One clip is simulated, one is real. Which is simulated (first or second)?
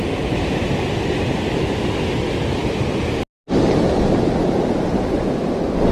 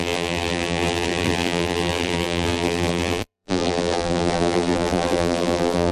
second